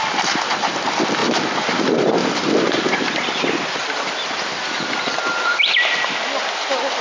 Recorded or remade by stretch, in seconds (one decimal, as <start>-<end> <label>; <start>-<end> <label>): 0.0-1.2 recorded; 1.2-1.8 remade; 1.8-2.2 recorded; 2.2-5.1 remade; 5.1-7.0 recorded